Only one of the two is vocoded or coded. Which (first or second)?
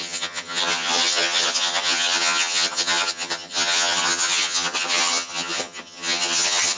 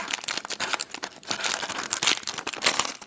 first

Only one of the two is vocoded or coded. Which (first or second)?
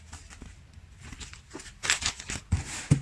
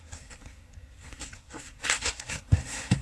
second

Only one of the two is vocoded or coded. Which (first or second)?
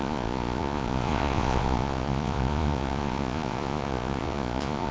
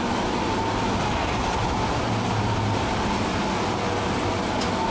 first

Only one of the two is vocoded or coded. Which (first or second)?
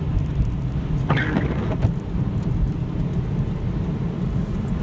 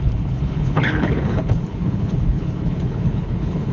second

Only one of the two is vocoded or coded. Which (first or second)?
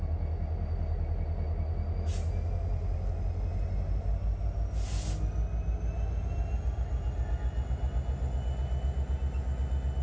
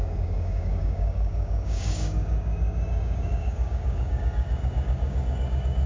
second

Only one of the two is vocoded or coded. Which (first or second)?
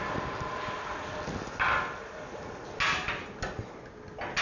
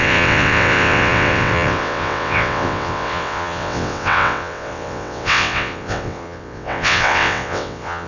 second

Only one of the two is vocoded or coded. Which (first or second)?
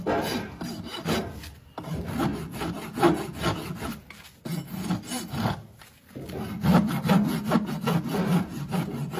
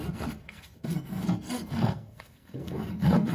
second